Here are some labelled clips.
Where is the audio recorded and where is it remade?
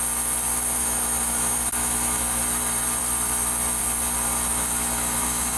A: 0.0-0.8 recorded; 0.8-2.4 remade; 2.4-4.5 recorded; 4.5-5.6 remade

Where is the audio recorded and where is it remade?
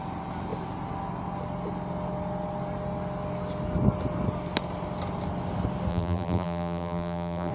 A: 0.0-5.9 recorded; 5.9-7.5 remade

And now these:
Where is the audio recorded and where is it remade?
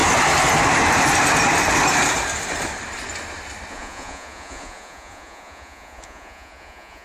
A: 0.0-3.7 recorded; 3.7-7.0 remade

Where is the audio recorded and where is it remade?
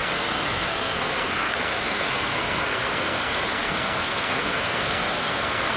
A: 0.0-5.8 remade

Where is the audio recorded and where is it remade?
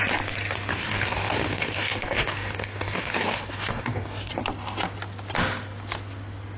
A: 0.0-0.7 recorded; 0.7-4.3 remade; 4.3-6.6 recorded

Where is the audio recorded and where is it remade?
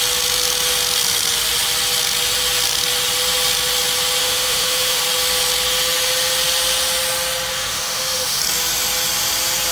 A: 0.0-4.2 recorded; 4.2-5.0 remade; 5.0-7.5 recorded; 7.5-8.4 remade; 8.4-9.7 recorded